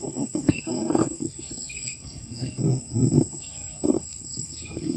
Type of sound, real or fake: fake